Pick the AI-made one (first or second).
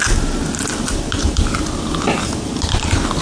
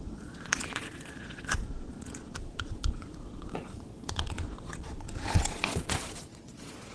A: second